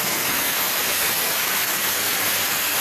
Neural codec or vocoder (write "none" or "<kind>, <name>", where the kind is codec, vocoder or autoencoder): codec, SNAC